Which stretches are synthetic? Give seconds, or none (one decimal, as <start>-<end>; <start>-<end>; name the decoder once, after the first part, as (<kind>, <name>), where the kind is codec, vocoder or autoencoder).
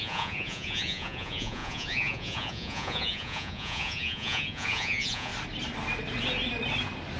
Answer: 0.0-5.3 (vocoder, Vocos)